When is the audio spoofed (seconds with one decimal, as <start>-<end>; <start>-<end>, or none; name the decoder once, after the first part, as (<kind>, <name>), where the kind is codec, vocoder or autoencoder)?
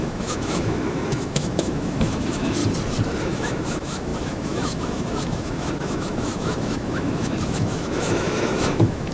0.0-2.6 (autoencoder, DAC-VAE); 3.2-9.1